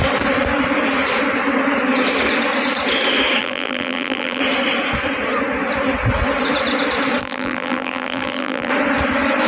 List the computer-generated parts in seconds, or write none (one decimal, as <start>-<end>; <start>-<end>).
3.4-4.4; 7.2-8.7